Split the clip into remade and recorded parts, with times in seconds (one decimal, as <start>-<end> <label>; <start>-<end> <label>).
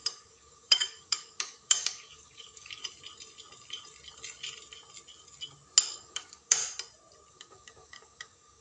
0.0-2.8 remade; 2.8-5.8 recorded; 5.8-6.6 remade; 6.6-7.3 recorded; 7.3-8.6 remade